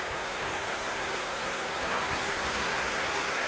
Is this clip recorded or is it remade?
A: remade